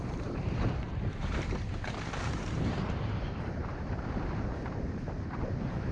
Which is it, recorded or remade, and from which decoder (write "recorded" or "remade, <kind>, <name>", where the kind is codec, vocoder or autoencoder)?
remade, vocoder, BigVGAN v2